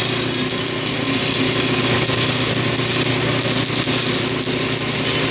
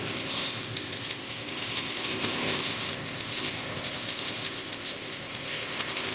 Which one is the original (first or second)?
first